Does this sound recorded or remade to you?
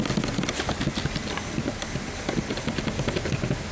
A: recorded